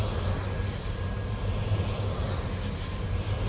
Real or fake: real